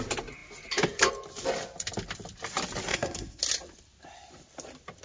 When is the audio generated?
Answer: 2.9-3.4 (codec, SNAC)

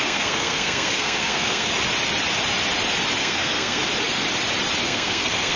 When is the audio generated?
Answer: 0.0-1.7 (codec, SNAC); 3.2-3.8; 4.8-5.6

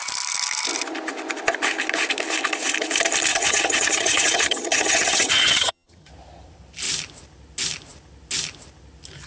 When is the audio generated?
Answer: 3.3-6.1 (vocoder, HiFi-GAN)

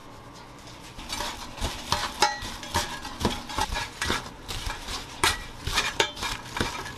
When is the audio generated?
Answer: 3.6-6.1 (vocoder, BigVGAN v2)